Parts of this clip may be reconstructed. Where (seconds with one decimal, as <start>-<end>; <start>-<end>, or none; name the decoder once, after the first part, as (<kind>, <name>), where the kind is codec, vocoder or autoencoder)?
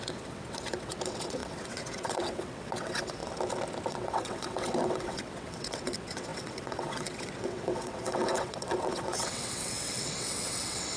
0.0-3.2 (vocoder, WaveNeXt); 3.9-11.0